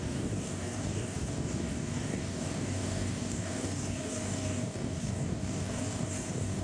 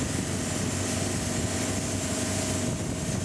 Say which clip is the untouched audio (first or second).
second